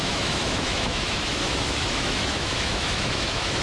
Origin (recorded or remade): remade